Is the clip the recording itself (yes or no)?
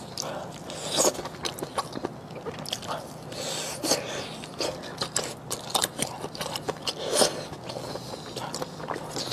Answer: yes